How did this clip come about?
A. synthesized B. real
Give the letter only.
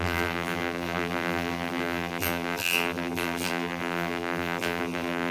A